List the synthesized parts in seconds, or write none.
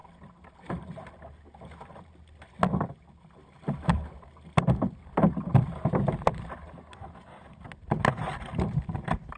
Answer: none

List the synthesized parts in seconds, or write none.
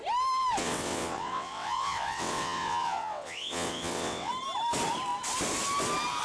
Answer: 0.6-4.3 (vocoder, WaveNeXt)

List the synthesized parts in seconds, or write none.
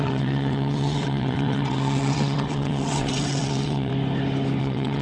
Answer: 0.0-3.9 (vocoder, WaveNeXt); 4.6-5.0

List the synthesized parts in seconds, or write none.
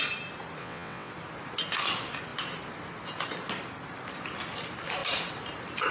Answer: 0.6-1.1 (vocoder, WaveNeXt)